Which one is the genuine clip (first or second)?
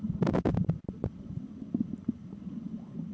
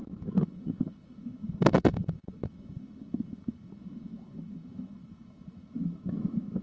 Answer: first